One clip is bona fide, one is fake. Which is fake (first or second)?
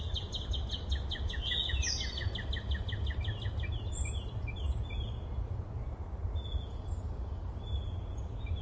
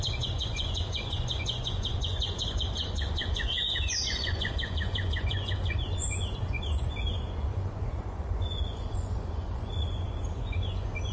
second